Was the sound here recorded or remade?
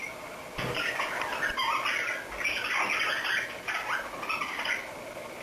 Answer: recorded